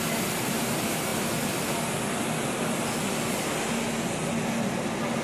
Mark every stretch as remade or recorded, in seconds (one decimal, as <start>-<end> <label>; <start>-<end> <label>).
0.0-5.2 recorded